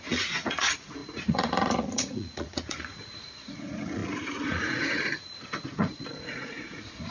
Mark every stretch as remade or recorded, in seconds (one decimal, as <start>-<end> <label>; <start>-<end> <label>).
0.0-7.1 remade